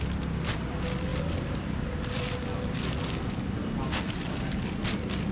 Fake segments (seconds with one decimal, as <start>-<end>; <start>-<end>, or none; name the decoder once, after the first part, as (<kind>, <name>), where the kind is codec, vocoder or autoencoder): none